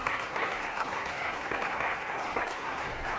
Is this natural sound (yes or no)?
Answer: no